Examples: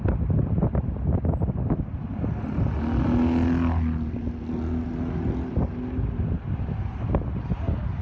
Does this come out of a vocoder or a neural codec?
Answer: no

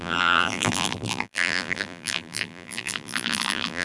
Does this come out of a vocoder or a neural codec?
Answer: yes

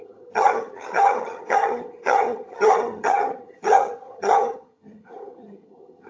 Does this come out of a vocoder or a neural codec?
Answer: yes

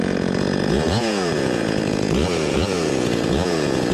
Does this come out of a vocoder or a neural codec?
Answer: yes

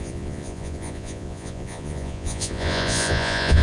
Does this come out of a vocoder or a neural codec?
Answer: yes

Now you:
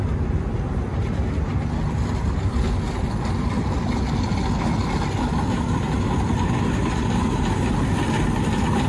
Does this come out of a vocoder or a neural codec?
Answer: no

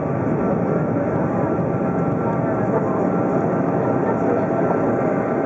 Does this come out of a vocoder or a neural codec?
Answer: no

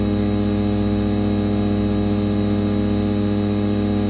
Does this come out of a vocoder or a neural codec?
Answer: no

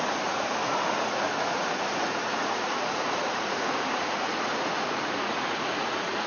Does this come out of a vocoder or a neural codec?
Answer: yes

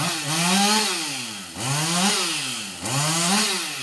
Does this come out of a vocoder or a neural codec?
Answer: no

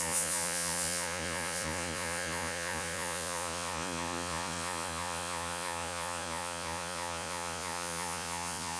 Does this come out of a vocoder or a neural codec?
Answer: yes